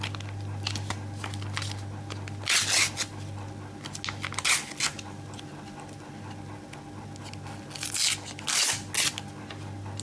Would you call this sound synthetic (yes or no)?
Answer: no